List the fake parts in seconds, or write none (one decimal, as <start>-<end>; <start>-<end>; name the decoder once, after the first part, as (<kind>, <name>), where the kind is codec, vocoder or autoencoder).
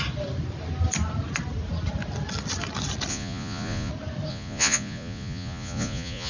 3.1-3.9 (vocoder, Vocos); 4.3-6.3